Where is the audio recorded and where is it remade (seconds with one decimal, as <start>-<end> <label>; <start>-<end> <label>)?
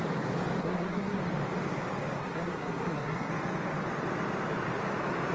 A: 0.0-0.6 recorded; 0.6-1.2 remade; 1.2-2.2 recorded; 2.2-3.3 remade; 3.3-5.3 recorded